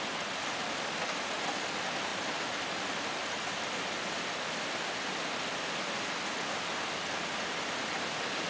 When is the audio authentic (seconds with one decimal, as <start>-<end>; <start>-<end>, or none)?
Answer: 0.0-8.5